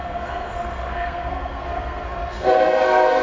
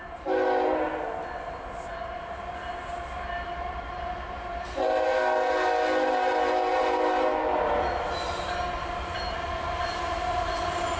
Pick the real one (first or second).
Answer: second